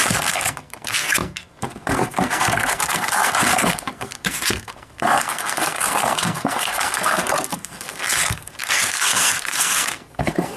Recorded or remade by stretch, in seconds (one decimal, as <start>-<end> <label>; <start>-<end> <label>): 0.0-10.6 remade